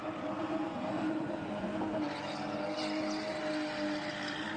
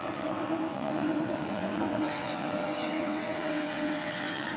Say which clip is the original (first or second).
first